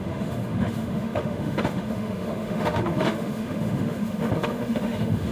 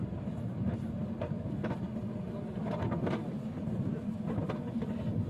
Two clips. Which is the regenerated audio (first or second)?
first